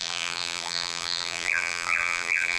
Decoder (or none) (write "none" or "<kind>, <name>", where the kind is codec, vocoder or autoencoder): vocoder, BigVGAN v2